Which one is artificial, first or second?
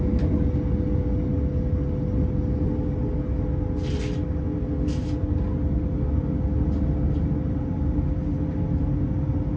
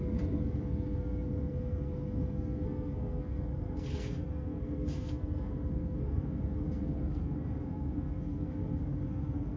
second